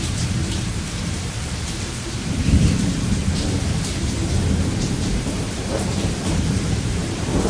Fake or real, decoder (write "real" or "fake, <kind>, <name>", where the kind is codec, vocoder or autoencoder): fake, vocoder, BigVGAN v2